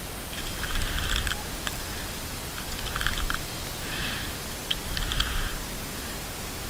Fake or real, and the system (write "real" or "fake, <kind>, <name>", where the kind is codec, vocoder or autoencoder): real